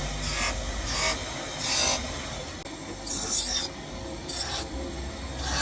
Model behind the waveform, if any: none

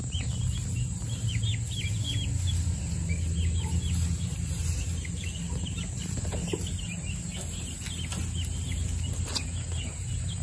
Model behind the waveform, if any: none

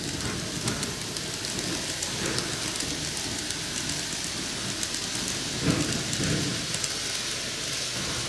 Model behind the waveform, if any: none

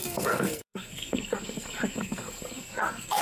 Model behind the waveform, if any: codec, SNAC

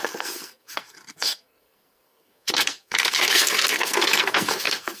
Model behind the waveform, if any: codec, SNAC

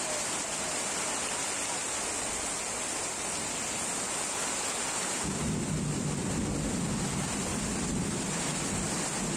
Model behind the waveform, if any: none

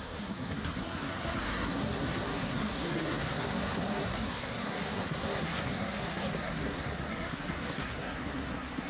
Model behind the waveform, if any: codec, SNAC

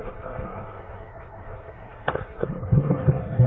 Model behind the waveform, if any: codec, SNAC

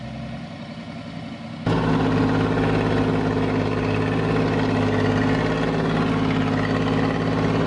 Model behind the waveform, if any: none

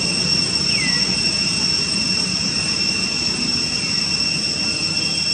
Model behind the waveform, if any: none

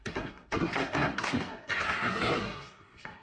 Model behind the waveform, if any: codec, SNAC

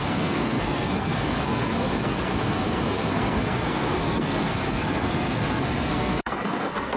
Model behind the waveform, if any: codec, SNAC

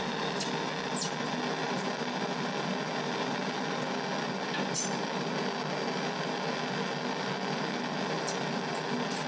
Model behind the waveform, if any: none